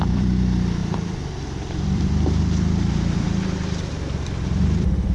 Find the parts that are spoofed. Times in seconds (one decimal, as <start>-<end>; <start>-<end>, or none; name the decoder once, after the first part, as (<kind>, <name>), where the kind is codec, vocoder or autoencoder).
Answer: 0.0-5.1 (vocoder, BigVGAN v2)